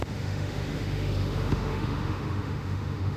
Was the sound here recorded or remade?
remade